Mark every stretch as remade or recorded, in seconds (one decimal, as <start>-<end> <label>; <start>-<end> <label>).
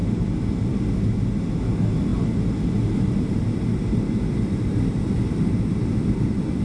0.0-0.8 remade; 0.8-2.1 recorded; 2.1-5.2 remade; 5.2-6.6 recorded